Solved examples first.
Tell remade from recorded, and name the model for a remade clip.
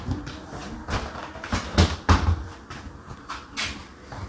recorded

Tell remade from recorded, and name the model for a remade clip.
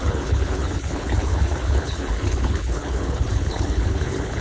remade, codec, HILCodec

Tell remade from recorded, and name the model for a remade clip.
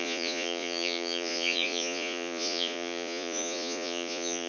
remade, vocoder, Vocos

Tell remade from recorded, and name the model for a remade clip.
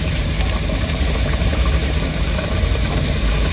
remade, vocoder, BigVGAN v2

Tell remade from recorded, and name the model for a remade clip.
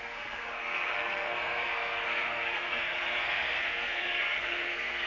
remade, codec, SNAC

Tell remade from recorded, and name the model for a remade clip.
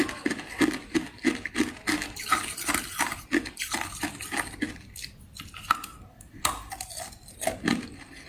recorded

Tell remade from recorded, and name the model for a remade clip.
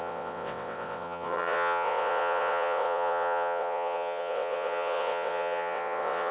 remade, vocoder, WaveNeXt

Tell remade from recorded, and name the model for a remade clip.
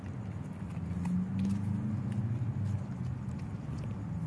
recorded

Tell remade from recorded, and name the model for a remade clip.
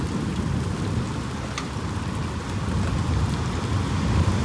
recorded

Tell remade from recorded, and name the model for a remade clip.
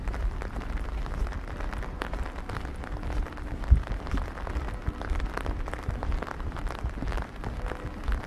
recorded